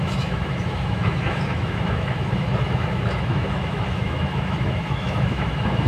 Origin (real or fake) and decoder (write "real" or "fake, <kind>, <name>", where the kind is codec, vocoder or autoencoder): fake, autoencoder, DAC-VAE